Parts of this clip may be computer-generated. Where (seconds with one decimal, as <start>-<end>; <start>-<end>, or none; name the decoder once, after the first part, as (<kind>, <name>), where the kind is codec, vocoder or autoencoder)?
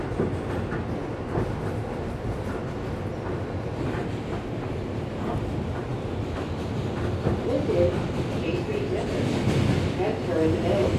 none